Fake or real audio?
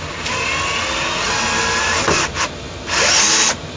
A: real